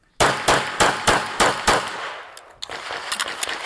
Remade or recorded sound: recorded